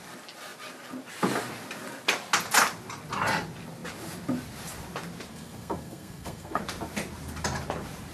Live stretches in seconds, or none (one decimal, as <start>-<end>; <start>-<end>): 0.0-5.3; 6.6-8.1